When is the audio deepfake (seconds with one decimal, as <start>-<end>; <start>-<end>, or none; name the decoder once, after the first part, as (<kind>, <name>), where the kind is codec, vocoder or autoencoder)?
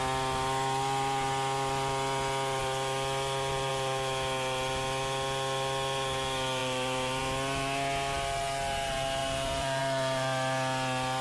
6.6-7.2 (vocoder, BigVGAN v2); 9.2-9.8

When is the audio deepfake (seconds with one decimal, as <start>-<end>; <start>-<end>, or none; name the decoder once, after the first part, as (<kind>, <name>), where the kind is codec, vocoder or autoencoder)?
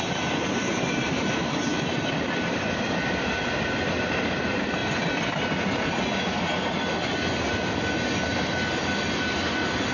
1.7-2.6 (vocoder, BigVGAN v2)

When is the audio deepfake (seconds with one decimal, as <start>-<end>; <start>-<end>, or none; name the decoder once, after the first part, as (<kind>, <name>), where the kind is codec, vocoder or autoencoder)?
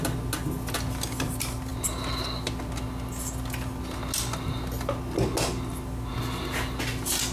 none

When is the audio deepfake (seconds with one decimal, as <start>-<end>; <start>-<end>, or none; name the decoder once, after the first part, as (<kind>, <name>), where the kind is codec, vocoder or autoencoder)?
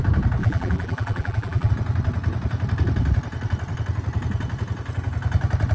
0.4-1.7 (vocoder, BigVGAN v2)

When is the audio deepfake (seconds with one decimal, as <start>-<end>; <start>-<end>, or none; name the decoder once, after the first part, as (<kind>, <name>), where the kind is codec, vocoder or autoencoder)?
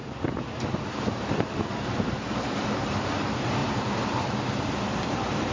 0.0-2.9 (vocoder, BigVGAN v2); 3.6-5.5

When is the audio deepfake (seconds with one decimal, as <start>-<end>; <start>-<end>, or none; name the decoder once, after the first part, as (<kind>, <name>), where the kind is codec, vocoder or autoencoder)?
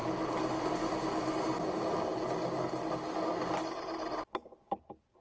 0.0-0.7 (vocoder, BigVGAN v2)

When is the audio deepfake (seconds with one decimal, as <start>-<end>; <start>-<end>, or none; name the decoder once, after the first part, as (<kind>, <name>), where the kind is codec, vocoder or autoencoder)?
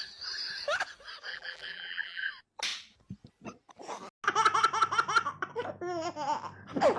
1.3-2.3 (vocoder, BigVGAN v2)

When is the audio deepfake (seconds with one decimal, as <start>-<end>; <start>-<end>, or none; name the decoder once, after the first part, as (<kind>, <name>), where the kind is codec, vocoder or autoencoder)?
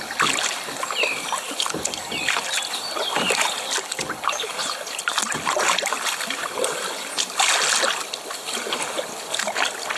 6.4-8.1 (vocoder, BigVGAN v2)